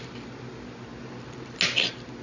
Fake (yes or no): no